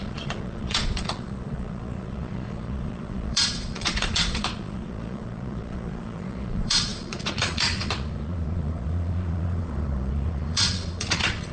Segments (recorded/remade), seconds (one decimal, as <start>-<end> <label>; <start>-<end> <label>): 0.0-11.5 remade